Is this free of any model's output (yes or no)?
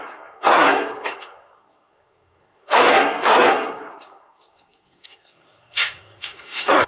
no